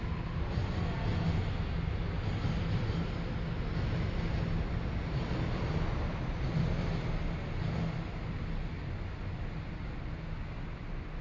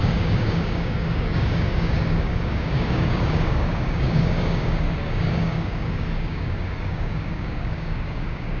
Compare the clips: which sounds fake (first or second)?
second